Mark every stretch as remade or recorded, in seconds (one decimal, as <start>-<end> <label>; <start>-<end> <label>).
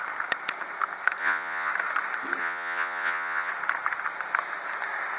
0.0-1.2 recorded; 1.2-1.7 remade; 1.7-2.4 recorded; 2.4-3.5 remade; 3.5-5.2 recorded